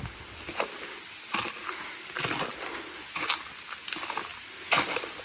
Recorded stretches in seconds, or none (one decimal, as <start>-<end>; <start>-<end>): 0.0-5.2